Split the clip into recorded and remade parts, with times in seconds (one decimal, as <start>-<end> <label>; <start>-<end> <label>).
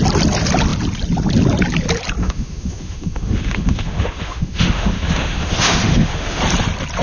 0.0-2.2 recorded; 2.2-6.4 remade; 6.4-7.0 recorded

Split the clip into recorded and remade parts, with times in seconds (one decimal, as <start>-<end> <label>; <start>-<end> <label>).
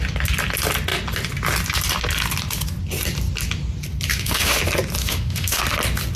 0.0-4.1 recorded; 4.1-4.6 remade; 4.6-5.0 recorded; 5.0-5.6 remade; 5.6-6.2 recorded